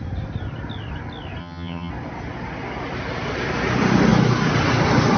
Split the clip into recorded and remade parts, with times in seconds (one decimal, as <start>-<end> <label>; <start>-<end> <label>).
0.0-1.4 recorded; 1.4-1.9 remade; 1.9-5.2 recorded